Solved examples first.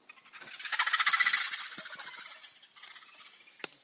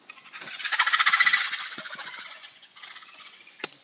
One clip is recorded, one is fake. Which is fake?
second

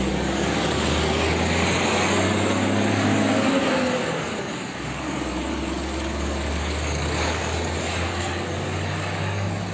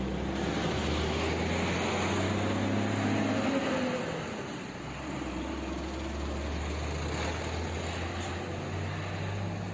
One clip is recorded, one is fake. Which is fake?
first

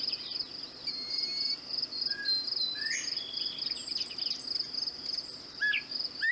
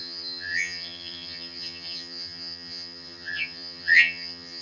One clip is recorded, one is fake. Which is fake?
second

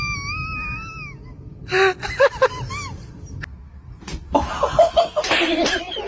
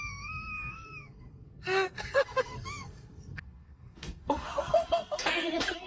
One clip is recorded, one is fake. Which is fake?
second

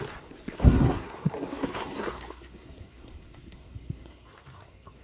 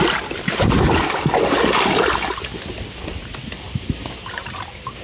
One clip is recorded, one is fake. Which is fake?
first